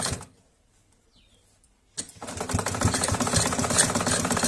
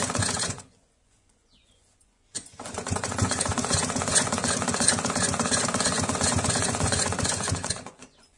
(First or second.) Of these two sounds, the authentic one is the first